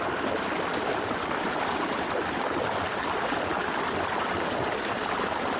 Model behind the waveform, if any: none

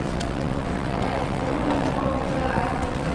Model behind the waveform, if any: vocoder, WaveNeXt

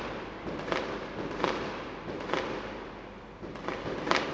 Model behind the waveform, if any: none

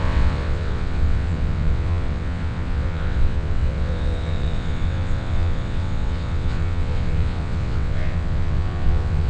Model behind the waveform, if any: vocoder, WaveNeXt